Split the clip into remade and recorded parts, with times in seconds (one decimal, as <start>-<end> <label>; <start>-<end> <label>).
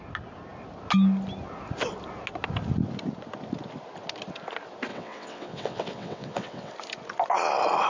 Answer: 0.0-4.9 recorded; 4.9-6.7 remade; 6.7-7.9 recorded